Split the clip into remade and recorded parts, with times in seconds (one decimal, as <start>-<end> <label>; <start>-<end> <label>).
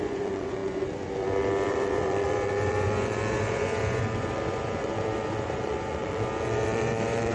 0.0-0.6 remade; 0.6-1.7 recorded; 1.7-7.3 remade